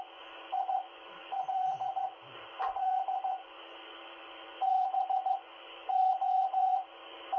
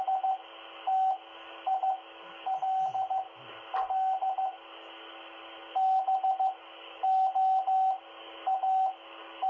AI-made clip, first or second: first